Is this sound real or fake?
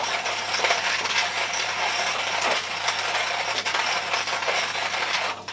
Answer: real